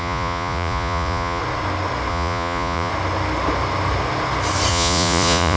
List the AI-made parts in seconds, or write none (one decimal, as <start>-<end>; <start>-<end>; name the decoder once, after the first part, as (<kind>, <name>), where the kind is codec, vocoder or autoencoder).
0.0-1.4 (vocoder, Vocos); 2.1-2.9; 4.7-5.6